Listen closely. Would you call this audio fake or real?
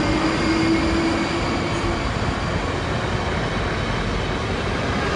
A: real